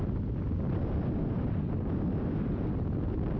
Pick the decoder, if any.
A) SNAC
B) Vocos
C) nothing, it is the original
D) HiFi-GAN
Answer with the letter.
C